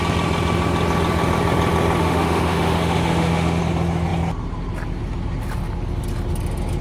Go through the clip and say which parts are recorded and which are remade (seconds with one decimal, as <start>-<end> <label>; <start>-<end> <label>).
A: 0.0-2.0 recorded; 2.0-3.6 remade; 3.6-6.8 recorded